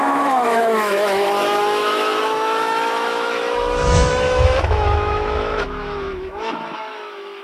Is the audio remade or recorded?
remade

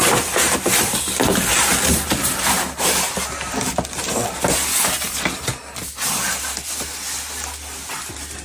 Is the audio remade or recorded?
recorded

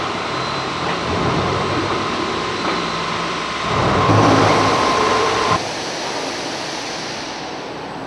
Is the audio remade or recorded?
remade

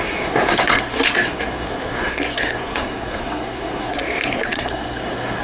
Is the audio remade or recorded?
remade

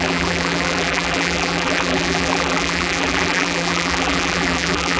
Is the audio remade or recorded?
remade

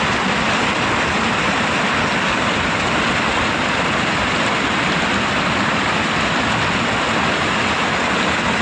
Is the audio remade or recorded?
recorded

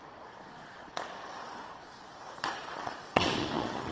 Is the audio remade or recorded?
remade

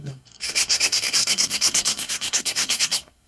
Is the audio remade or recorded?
remade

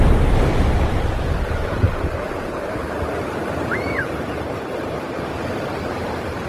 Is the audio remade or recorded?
remade